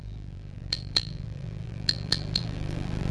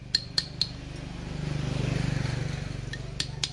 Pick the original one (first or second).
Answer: second